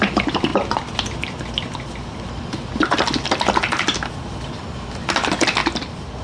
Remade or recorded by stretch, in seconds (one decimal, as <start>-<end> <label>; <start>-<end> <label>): 0.0-6.2 recorded